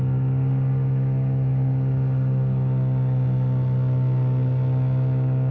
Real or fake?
real